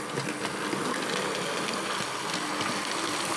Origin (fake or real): real